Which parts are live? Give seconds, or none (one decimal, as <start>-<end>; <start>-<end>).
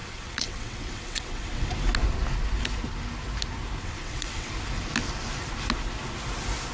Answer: 1.7-3.8; 4.5-6.7